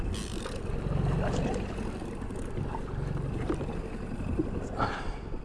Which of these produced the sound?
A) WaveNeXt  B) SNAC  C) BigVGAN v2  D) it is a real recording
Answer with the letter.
D